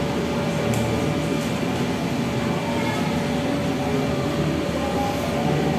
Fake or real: real